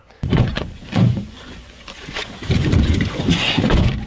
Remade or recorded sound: remade